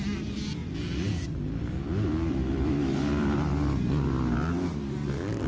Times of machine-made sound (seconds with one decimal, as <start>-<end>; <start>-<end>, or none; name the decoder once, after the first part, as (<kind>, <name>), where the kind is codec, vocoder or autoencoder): none